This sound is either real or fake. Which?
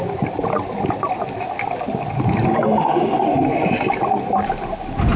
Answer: real